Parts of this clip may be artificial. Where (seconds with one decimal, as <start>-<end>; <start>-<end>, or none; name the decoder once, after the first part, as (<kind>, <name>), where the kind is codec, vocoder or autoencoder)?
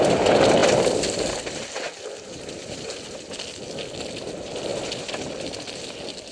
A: none